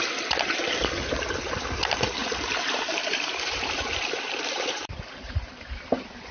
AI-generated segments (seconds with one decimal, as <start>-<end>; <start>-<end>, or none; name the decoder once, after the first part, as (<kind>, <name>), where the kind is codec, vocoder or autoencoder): 2.2-6.3 (vocoder, BigVGAN v2)